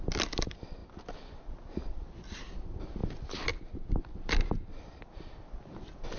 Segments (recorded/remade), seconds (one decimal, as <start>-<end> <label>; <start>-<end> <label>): 0.0-6.2 recorded